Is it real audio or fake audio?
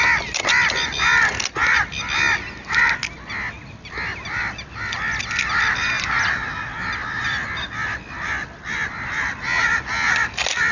real